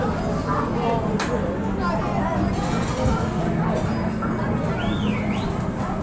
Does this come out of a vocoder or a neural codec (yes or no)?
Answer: no